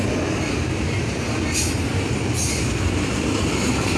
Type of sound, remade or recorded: recorded